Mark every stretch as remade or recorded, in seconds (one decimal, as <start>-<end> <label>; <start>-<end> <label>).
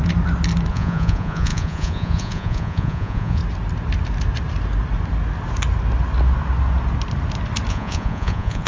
0.0-0.7 recorded; 0.7-3.4 remade; 3.4-7.7 recorded; 7.7-8.7 remade